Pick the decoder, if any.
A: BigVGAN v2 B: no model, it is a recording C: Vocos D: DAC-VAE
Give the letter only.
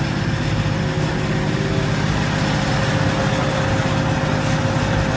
B